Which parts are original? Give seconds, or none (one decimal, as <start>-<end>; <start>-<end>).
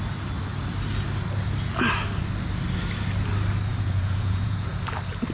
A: 0.0-3.7; 4.7-5.3